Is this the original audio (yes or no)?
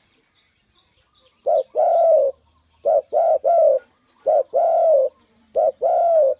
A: yes